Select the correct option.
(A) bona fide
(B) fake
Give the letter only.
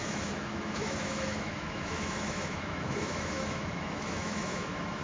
B